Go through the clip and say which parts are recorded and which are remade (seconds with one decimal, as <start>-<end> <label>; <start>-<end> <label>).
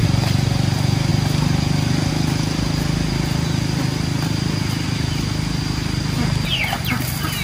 0.0-7.4 recorded